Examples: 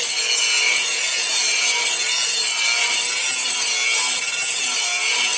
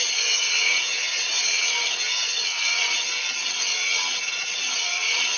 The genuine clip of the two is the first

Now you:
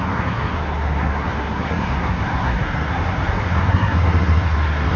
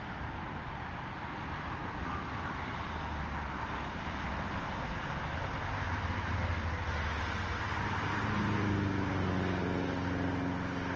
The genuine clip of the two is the second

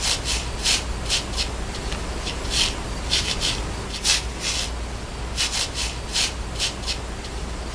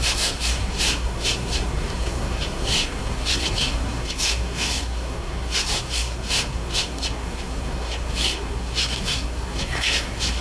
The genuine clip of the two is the first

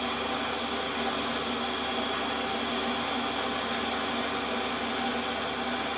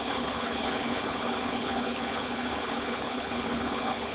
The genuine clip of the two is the first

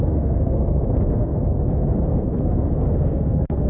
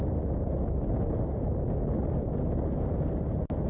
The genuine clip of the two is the second